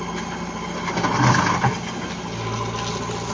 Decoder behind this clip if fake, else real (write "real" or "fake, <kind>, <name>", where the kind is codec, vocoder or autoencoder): real